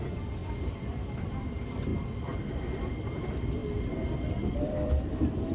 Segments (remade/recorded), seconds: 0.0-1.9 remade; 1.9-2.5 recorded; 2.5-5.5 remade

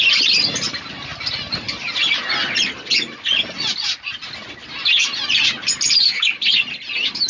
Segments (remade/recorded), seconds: 0.0-7.3 recorded

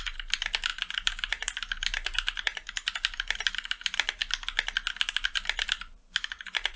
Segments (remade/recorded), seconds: 0.0-4.2 remade; 4.2-5.1 recorded; 5.1-6.8 remade

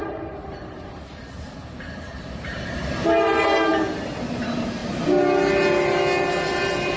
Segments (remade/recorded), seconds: 0.0-3.7 remade; 3.7-7.0 recorded

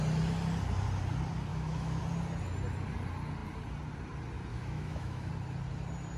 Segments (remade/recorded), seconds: 0.0-1.5 recorded; 1.5-2.0 remade; 2.0-4.5 recorded; 4.5-5.3 remade; 5.3-6.2 recorded

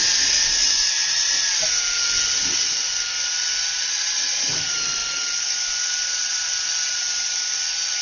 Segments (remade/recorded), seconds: 0.0-8.0 recorded